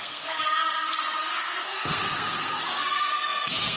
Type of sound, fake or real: fake